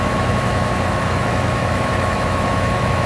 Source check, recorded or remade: remade